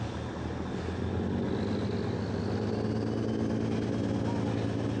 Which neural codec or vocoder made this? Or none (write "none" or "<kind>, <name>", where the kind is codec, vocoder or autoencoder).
none